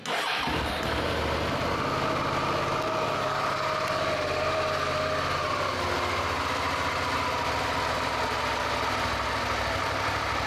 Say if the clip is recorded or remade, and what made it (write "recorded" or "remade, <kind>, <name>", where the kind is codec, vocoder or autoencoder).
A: recorded